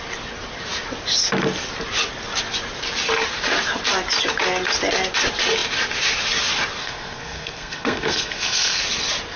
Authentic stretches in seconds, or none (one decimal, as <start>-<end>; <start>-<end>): 0.0-6.8; 8.8-9.4

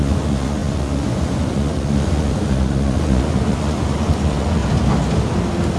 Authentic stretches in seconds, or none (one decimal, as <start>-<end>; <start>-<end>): 4.6-5.8

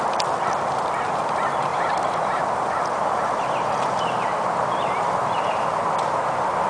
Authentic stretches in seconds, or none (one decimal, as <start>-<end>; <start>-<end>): 0.0-1.7; 5.7-6.7